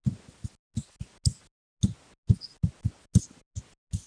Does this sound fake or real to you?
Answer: real